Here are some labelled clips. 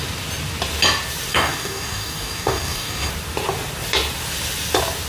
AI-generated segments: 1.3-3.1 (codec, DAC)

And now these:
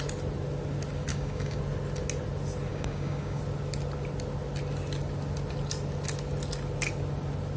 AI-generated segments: 1.1-1.6 (codec, DAC); 2.7-3.4

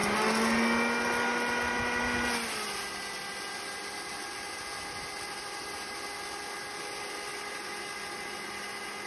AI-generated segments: none

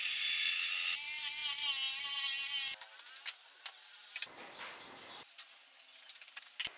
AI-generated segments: none

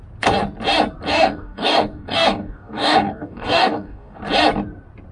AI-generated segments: 1.1-4.2 (codec, DAC)

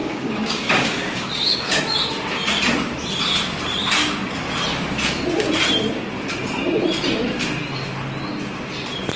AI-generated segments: 0.0-1.8 (codec, DAC)